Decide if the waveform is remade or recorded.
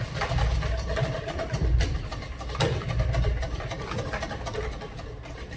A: remade